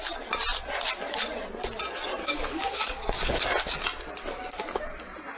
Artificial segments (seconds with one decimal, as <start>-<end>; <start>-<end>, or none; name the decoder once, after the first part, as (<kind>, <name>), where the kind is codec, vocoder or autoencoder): 2.2-3.4 (codec, DAC)